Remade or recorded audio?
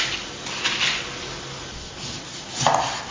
recorded